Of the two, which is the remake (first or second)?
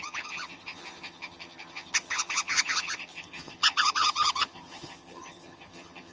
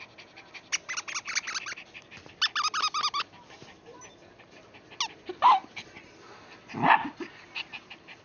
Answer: first